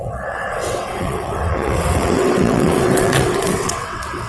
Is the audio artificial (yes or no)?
yes